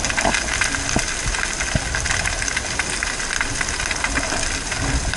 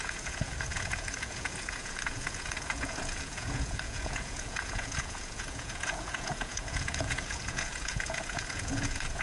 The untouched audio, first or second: first